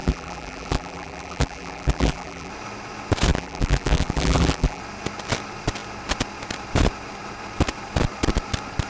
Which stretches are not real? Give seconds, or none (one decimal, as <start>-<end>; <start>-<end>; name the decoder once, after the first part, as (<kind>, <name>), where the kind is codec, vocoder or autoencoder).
0.0-2.5 (vocoder, BigVGAN v2); 3.3-4.8